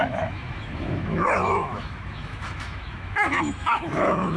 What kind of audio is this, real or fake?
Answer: fake